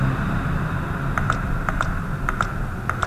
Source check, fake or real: fake